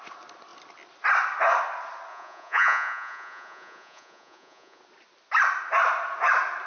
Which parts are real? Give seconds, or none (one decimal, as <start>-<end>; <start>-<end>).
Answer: 0.0-2.1; 4.8-6.7